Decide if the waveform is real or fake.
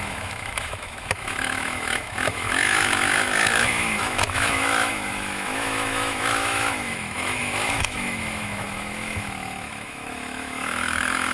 fake